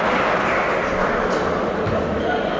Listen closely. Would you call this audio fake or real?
real